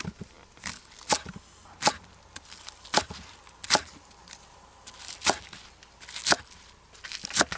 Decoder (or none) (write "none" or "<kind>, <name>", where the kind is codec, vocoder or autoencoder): none